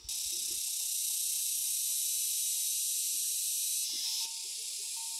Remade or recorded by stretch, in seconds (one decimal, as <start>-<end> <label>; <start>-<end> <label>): 0.0-5.2 recorded